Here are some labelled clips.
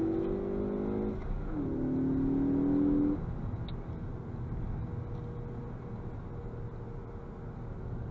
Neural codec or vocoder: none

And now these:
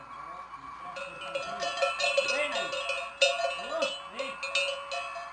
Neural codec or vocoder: none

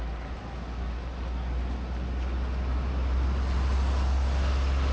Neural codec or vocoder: none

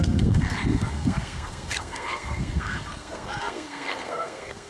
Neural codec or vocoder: codec, SNAC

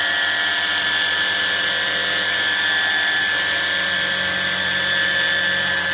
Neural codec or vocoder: none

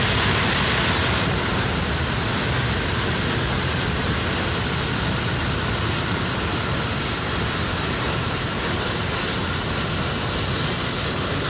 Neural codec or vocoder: none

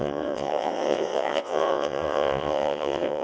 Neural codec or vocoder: vocoder, WaveNeXt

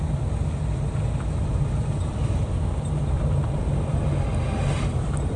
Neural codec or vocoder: none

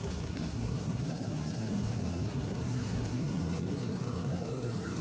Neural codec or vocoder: codec, SNAC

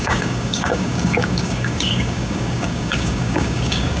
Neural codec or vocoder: codec, DAC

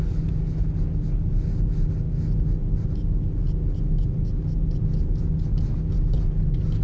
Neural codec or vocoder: none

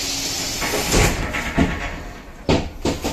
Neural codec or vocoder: none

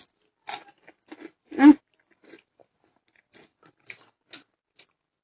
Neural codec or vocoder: none